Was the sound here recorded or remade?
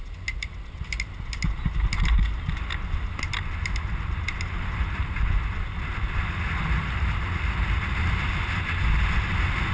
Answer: recorded